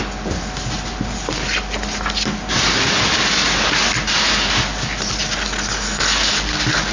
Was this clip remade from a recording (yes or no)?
no